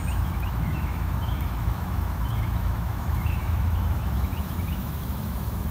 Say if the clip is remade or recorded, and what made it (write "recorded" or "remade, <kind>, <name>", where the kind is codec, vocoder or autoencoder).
remade, autoencoder, DAC-VAE